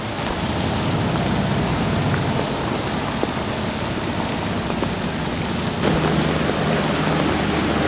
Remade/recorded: recorded